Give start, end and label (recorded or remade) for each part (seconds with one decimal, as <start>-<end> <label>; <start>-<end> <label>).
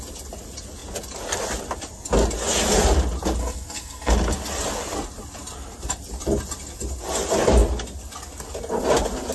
0.0-3.4 recorded; 3.4-4.1 remade; 4.1-9.3 recorded